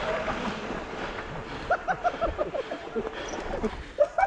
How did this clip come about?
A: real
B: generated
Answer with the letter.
B